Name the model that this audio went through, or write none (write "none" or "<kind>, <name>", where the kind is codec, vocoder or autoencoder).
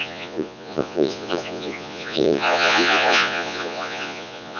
vocoder, Vocos